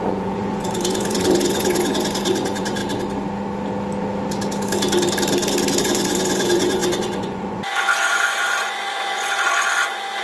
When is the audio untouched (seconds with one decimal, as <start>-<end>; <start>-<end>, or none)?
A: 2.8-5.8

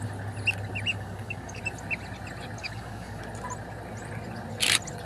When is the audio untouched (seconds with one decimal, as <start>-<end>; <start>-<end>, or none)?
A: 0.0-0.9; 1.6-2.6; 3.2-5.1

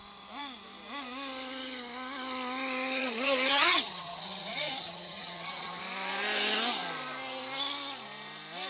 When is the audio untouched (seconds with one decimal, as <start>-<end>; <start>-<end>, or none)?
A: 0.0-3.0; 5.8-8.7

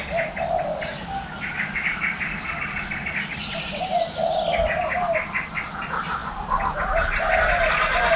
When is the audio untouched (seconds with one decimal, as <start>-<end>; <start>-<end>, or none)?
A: 0.0-8.2

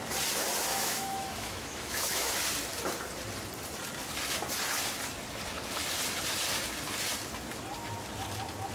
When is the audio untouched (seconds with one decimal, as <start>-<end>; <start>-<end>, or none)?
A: 0.0-0.7; 2.3-8.7